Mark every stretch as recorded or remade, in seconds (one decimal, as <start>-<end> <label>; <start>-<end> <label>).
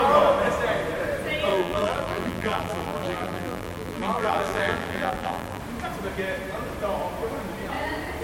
0.0-1.5 recorded; 1.5-5.6 remade; 5.6-8.2 recorded